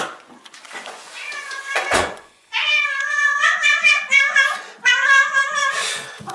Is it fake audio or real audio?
fake